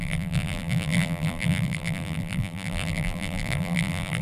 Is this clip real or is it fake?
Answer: fake